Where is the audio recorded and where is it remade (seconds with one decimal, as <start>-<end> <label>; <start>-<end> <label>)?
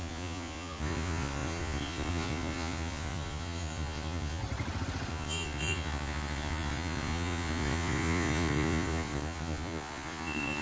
0.0-4.4 remade; 4.4-5.1 recorded; 5.1-10.6 remade